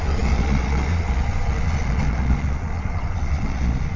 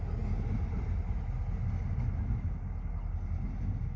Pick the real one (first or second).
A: second